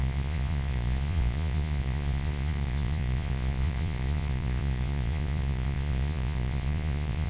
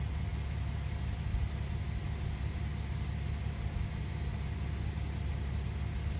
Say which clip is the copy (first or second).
first